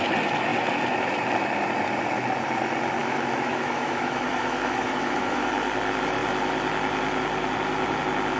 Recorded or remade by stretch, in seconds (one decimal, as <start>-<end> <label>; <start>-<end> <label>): 0.0-3.0 recorded; 3.0-5.5 remade; 5.5-8.4 recorded